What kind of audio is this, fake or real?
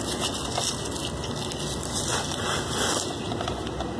real